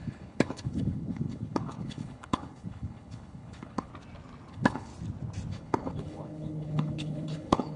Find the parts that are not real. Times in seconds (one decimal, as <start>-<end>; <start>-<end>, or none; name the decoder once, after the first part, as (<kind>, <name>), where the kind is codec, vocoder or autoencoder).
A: 0.0-3.9 (codec, HILCodec); 4.5-4.9; 5.5-7.8